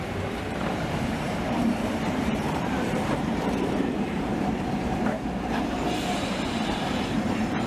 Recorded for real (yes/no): no